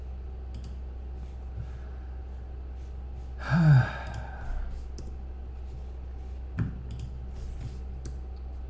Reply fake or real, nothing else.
real